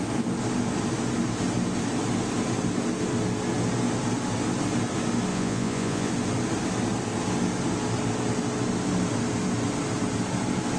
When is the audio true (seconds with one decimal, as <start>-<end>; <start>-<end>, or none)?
0.0-5.3; 6.1-10.8